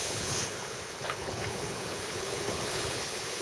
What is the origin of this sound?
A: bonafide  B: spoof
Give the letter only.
B